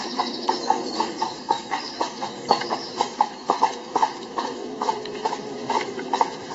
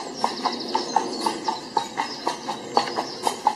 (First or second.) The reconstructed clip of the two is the first